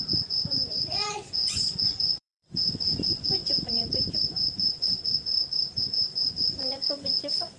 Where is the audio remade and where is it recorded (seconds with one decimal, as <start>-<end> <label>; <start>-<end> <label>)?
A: 0.0-5.3 remade; 5.3-5.8 recorded; 5.8-7.6 remade